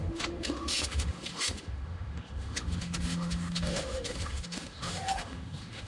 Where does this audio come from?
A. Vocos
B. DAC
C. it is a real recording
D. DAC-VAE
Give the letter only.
D